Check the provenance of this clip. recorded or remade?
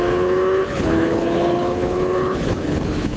remade